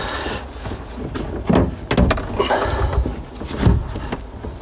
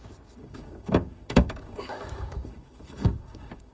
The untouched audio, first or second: first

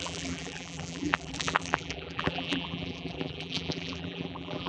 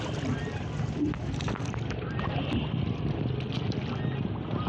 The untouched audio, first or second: second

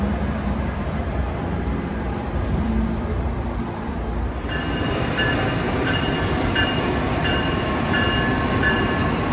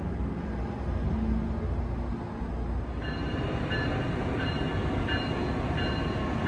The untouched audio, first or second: second